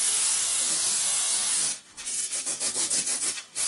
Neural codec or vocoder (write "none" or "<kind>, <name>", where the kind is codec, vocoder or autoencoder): codec, DAC